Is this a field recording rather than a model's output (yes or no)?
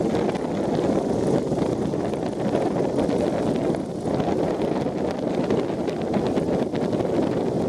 yes